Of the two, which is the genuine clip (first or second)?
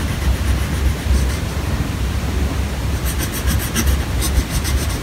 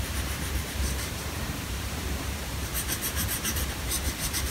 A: first